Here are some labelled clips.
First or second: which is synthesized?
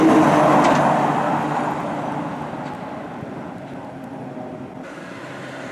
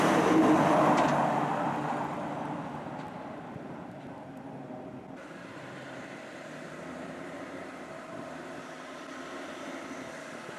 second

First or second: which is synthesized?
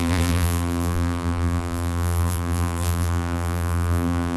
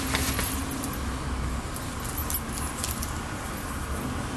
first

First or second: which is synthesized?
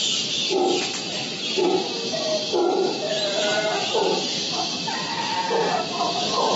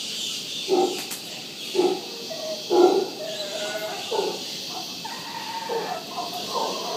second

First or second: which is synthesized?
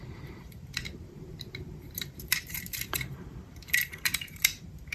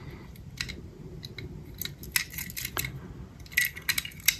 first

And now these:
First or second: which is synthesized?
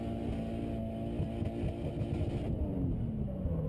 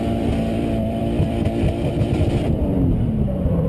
second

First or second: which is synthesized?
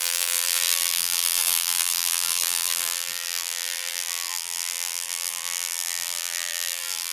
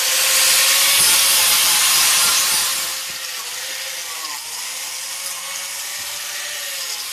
first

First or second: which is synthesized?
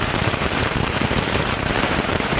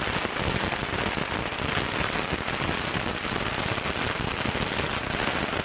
first